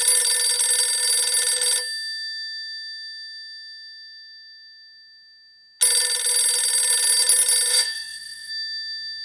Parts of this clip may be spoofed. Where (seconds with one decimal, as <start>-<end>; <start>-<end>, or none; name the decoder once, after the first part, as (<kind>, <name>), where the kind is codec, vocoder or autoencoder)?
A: 7.7-8.5 (vocoder, WaveNeXt)